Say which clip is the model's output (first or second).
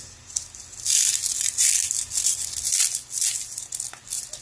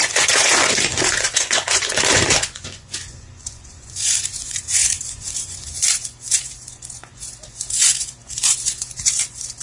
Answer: second